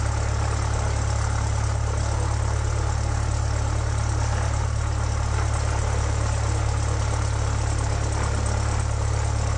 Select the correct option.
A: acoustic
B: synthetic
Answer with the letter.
A